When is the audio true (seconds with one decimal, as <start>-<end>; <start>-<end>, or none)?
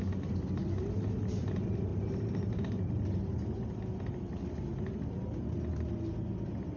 0.0-1.9; 2.9-6.8